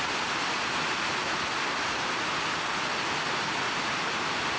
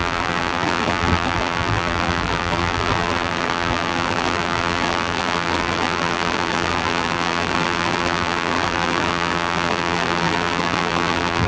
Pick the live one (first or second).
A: first